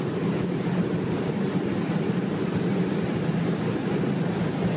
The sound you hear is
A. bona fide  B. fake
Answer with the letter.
A